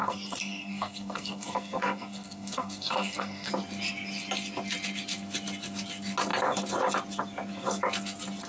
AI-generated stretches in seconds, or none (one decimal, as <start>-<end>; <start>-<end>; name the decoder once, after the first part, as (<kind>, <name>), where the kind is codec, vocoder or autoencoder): 0.0-3.5 (codec, SNAC)